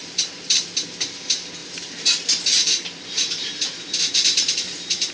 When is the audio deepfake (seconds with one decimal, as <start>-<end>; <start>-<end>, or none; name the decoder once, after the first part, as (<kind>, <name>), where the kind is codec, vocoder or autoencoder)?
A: 0.0-0.6 (vocoder, BigVGAN v2); 1.6-5.1